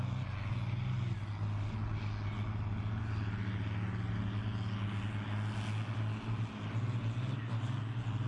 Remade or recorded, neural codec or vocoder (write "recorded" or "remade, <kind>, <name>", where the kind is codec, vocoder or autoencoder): recorded